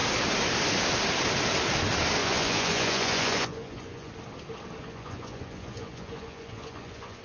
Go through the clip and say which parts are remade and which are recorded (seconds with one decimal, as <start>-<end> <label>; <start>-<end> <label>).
0.0-2.2 recorded; 2.2-4.1 remade; 4.1-4.8 recorded; 4.8-7.2 remade

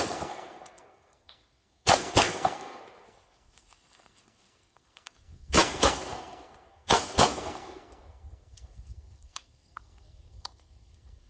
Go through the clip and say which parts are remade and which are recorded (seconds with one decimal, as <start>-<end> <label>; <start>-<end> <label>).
0.0-11.3 remade